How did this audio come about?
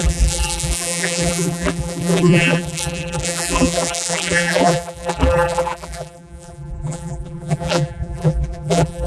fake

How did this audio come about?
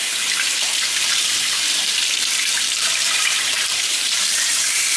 fake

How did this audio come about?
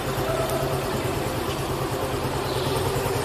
real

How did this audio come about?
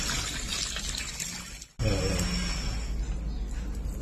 real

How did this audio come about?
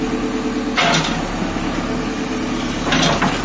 real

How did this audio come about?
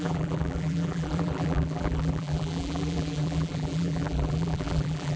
fake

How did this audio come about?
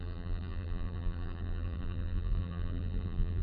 fake